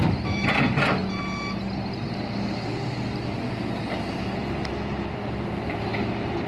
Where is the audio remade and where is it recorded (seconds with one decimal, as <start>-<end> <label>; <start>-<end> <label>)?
0.0-6.5 remade